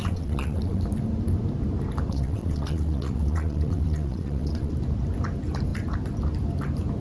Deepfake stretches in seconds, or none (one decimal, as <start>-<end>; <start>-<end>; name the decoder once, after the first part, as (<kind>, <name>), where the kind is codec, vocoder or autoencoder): 0.0-0.8 (vocoder, WaveNeXt); 2.1-4.7